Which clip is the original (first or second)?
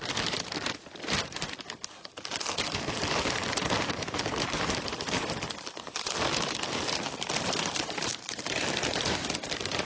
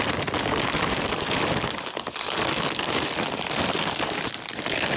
second